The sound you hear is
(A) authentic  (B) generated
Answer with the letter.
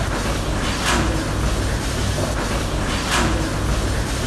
A